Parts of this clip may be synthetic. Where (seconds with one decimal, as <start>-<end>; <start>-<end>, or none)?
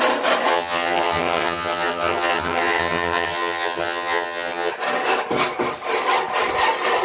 0.5-4.7